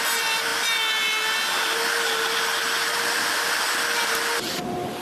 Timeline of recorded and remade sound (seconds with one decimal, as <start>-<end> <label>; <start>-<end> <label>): 0.0-5.0 recorded